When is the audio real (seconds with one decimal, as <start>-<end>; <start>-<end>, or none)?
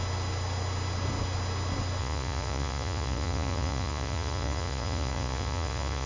0.0-2.0